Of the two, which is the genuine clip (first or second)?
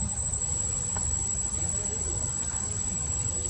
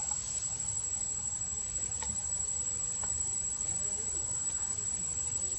first